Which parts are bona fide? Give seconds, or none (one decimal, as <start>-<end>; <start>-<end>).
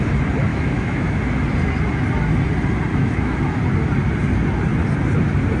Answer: 0.0-0.5; 1.2-2.9; 3.6-5.6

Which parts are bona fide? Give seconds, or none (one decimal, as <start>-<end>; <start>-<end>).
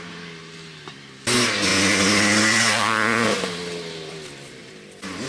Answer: 0.0-5.3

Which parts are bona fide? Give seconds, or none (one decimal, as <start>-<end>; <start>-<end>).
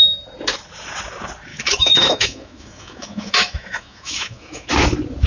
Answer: 0.0-1.5; 4.7-5.3